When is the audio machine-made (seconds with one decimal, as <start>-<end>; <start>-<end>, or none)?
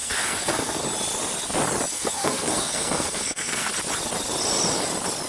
0.0-0.8; 1.9-3.7